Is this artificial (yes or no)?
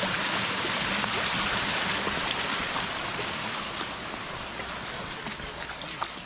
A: no